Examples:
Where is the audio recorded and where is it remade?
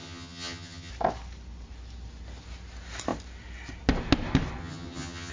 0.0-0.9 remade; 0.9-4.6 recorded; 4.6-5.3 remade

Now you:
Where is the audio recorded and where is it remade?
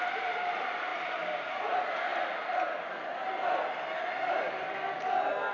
0.0-5.5 recorded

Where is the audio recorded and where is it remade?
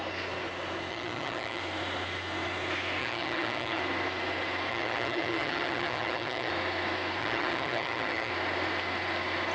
0.0-0.9 recorded; 0.9-1.6 remade; 1.6-3.0 recorded; 3.0-3.8 remade; 3.8-4.7 recorded; 4.7-6.5 remade; 6.5-7.2 recorded; 7.2-8.3 remade; 8.3-9.5 recorded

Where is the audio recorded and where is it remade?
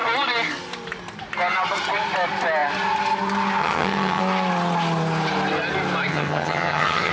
0.0-3.6 recorded; 3.6-4.2 remade; 4.2-6.1 recorded; 6.1-7.1 remade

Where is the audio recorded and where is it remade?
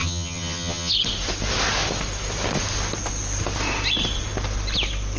0.0-0.9 remade; 0.9-5.2 recorded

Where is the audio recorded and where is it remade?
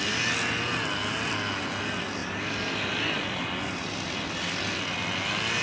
0.0-5.6 recorded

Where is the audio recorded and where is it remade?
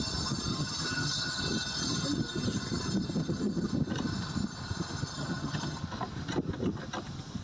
0.0-0.5 recorded; 0.5-1.4 remade; 1.4-3.2 recorded; 3.2-3.7 remade; 3.7-5.1 recorded; 5.1-5.8 remade; 5.8-7.4 recorded